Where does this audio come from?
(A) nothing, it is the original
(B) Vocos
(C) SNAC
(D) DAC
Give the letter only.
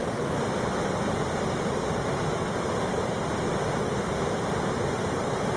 A